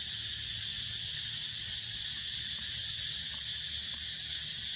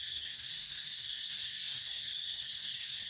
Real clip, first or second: first